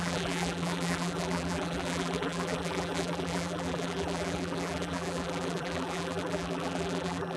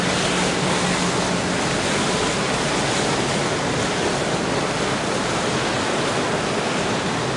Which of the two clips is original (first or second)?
second